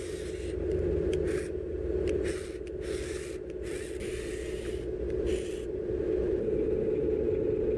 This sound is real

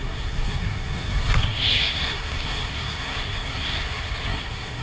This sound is fake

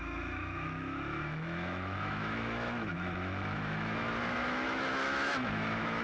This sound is fake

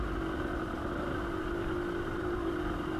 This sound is real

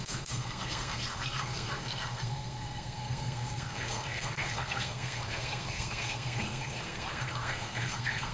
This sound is fake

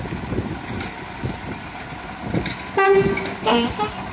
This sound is real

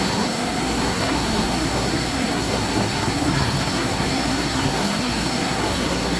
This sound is fake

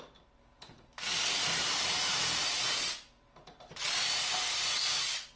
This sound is real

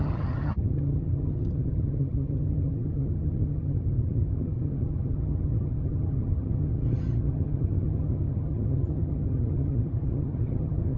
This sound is fake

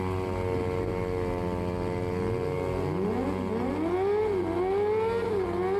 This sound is real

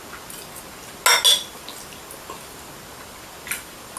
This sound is real